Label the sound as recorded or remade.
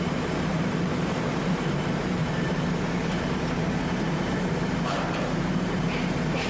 remade